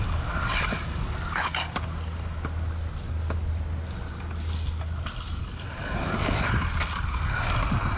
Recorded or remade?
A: recorded